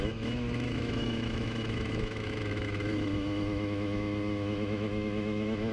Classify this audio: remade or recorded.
remade